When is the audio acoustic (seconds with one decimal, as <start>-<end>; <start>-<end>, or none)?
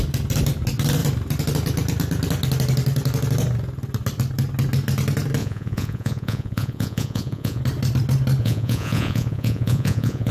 0.0-5.4; 7.6-8.4